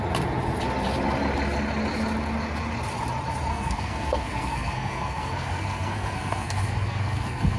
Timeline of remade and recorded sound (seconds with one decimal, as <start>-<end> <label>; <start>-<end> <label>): 0.0-3.5 recorded; 3.5-7.6 remade